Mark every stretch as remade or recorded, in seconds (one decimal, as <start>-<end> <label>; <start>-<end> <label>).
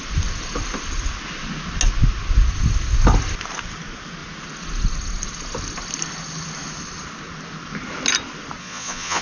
0.0-8.6 recorded; 8.6-9.2 remade